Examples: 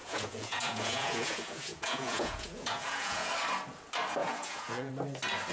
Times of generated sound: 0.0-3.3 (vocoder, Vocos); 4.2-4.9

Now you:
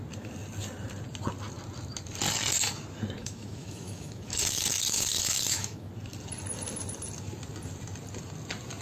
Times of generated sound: 3.2-5.9 (autoencoder, DAC-VAE)

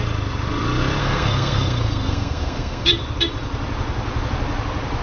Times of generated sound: 1.0-2.9 (codec, SNAC)

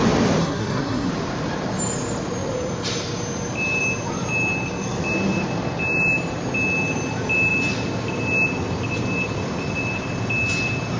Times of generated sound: 0.4-1.1 (codec, SNAC)

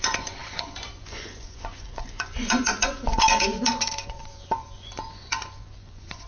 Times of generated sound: 0.0-6.3 (vocoder, Vocos)

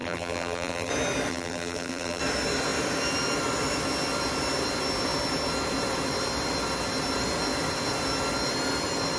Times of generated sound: 0.0-0.9 (vocoder, BigVGAN v2); 1.3-2.2